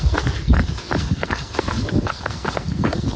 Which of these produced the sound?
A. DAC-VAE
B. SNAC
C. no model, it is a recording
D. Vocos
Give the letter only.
B